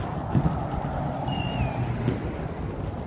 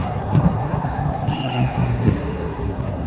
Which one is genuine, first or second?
first